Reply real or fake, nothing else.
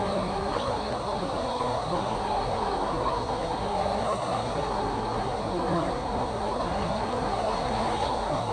fake